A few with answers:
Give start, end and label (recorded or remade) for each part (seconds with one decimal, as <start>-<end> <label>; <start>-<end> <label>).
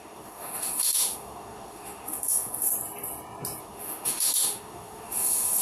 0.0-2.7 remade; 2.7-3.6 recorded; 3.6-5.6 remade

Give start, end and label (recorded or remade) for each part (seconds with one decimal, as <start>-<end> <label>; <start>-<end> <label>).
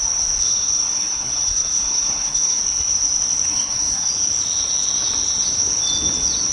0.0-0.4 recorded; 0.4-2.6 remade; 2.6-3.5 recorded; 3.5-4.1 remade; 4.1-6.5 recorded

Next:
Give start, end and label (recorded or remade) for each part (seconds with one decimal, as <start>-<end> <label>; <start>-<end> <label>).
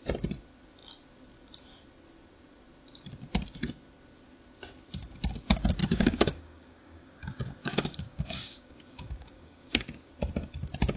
0.0-5.8 recorded; 5.8-7.1 remade; 7.1-7.6 recorded; 7.6-10.1 remade; 10.1-11.0 recorded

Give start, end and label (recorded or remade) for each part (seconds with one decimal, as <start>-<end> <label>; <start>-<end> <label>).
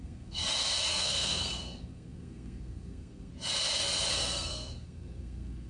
0.0-0.4 remade; 0.4-0.9 recorded; 0.9-3.3 remade; 3.3-4.1 recorded; 4.1-5.7 remade